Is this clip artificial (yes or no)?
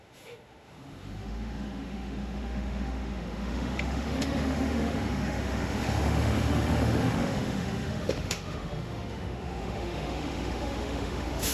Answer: yes